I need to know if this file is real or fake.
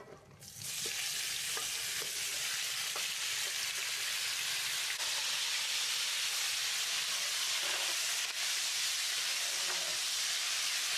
real